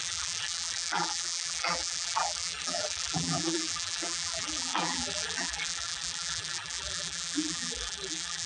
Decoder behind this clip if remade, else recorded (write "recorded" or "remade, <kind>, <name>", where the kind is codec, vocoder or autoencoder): remade, vocoder, BigVGAN v2